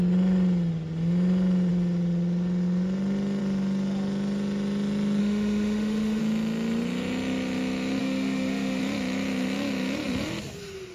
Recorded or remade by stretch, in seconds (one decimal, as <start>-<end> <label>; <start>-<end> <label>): 0.0-5.2 recorded; 5.2-6.2 remade; 6.2-8.0 recorded; 8.0-8.8 remade; 8.8-10.9 recorded